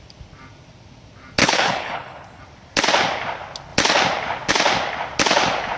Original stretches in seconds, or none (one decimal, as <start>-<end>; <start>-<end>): 0.0-1.4; 2.4-5.8